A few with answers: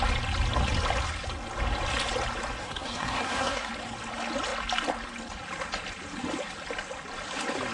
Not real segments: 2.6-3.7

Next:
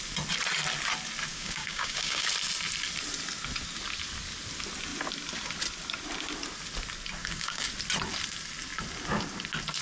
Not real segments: 1.3-2.3; 7.2-7.7

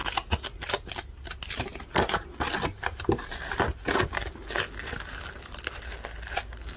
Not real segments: none

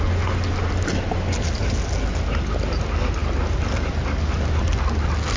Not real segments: none